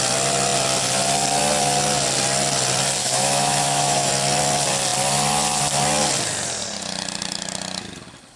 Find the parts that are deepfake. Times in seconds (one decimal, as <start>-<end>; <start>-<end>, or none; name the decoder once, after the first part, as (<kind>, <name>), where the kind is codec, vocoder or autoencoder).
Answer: 3.0-4.1 (autoencoder, DAC-VAE)